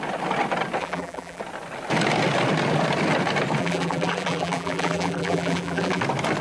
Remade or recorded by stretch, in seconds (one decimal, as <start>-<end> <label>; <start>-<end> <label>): 0.0-0.8 recorded; 0.8-1.4 remade; 1.4-3.6 recorded; 3.6-6.0 remade; 6.0-6.4 recorded